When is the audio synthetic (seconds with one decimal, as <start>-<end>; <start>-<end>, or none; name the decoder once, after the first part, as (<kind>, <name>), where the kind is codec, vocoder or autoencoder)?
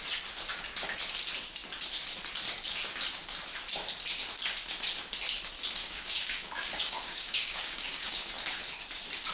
5.8-8.3 (codec, DAC)